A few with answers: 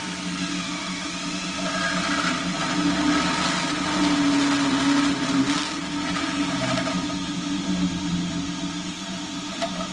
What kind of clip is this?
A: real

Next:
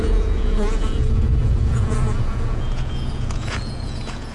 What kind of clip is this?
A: fake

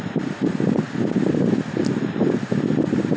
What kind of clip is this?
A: real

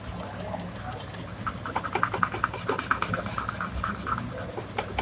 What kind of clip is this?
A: real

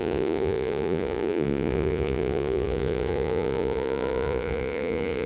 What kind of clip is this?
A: fake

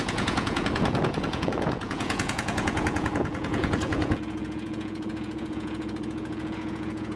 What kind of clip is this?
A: fake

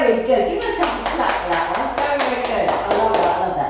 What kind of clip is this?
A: real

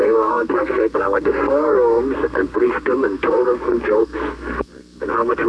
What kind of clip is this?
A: fake